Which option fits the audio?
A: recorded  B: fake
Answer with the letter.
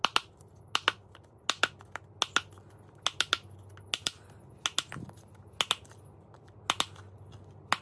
A